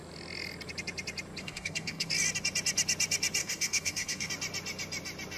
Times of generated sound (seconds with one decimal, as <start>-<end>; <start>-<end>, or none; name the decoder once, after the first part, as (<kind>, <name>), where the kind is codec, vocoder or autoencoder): 1.4-2.1 (codec, DAC); 3.4-4.3